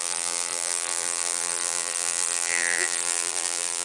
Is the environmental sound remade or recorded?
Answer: remade